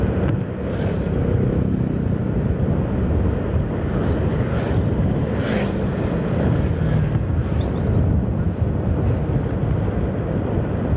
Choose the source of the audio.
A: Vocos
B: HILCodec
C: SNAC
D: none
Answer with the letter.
D